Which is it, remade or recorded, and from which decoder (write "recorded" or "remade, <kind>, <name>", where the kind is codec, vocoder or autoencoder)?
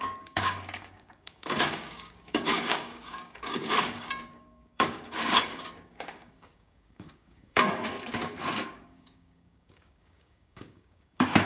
remade, codec, DAC